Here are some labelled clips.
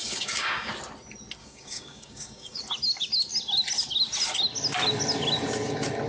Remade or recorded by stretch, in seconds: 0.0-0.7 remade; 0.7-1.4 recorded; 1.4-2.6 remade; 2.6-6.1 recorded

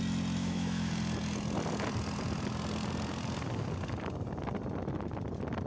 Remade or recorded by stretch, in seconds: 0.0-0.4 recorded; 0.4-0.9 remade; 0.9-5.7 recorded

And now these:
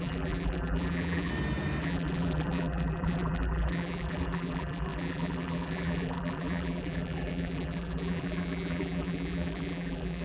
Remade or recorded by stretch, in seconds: 0.0-1.3 remade; 1.3-1.8 recorded; 1.8-10.2 remade